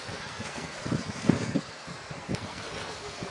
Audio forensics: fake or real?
fake